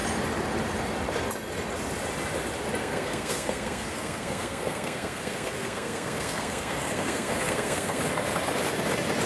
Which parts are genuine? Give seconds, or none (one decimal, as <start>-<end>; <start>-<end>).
0.0-2.8; 8.0-9.3